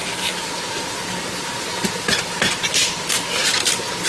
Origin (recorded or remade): recorded